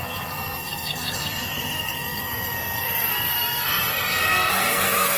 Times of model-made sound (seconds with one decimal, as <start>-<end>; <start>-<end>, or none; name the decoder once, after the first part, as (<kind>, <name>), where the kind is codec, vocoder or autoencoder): 0.0-5.2 (codec, SNAC)